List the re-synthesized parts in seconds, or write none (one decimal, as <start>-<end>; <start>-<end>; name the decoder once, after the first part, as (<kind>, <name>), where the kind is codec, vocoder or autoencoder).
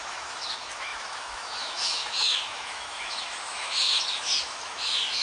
0.0-5.2 (autoencoder, DAC-VAE)